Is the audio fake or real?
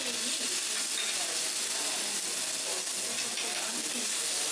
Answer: real